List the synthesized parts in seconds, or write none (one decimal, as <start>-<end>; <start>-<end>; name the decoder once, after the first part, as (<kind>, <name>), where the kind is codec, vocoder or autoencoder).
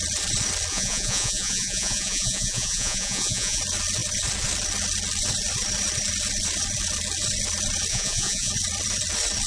0.7-3.6 (vocoder, Vocos); 7.9-8.5